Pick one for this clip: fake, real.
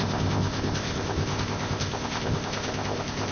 fake